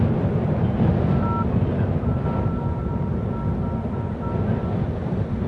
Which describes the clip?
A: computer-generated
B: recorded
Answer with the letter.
B